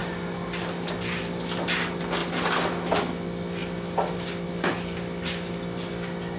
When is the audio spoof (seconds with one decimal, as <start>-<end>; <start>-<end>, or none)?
0.0-1.2; 2.2-2.9; 3.6-5.9